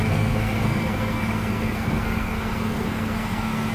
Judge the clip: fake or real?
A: fake